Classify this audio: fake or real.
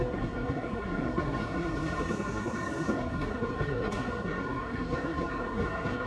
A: fake